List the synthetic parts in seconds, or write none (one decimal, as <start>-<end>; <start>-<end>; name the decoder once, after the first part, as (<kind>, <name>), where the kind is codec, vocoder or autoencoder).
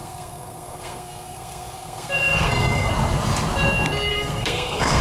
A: 0.0-2.9 (codec, SNAC); 4.1-5.0